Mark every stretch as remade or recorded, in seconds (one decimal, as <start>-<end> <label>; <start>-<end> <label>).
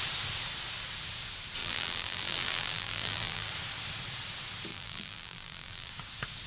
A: 0.0-1.6 recorded; 1.6-3.5 remade; 3.5-4.7 recorded; 4.7-5.9 remade; 5.9-6.5 recorded